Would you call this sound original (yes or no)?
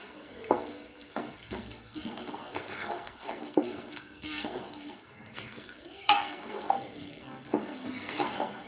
no